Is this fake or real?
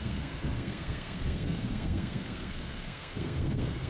fake